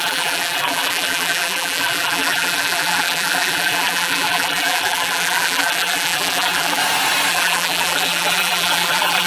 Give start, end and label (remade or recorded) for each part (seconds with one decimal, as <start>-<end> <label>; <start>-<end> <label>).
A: 0.0-6.8 remade; 6.8-7.3 recorded; 7.3-9.3 remade